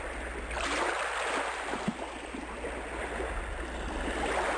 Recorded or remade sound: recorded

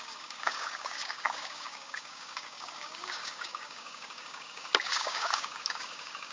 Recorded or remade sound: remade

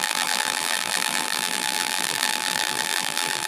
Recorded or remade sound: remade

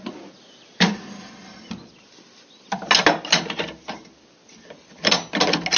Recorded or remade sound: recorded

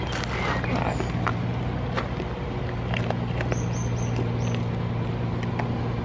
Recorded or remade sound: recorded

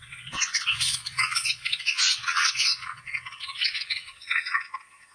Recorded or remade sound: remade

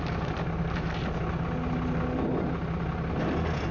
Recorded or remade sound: recorded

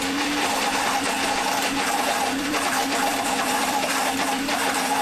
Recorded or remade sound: remade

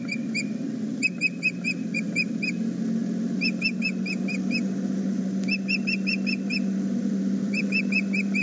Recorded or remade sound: recorded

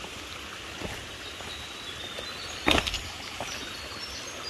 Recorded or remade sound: recorded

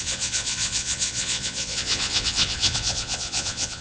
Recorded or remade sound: remade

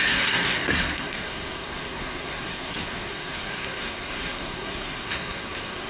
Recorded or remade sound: remade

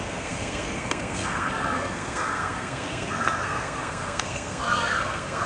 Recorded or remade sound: remade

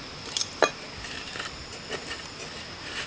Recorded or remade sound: recorded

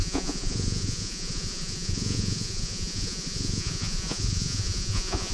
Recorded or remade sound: remade